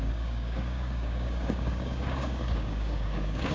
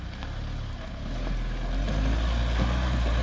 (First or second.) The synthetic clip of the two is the first